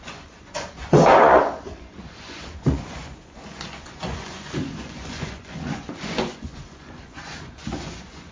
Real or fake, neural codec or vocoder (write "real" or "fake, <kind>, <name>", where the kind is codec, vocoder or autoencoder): fake, vocoder, Vocos